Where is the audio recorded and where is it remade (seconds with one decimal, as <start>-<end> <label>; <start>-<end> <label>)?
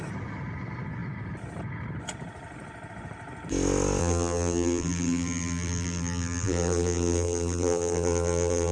0.0-4.0 recorded; 4.0-8.7 remade